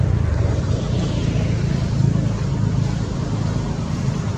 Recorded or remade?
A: recorded